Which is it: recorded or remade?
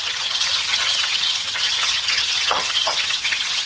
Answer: remade